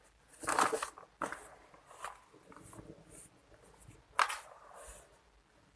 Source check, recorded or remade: recorded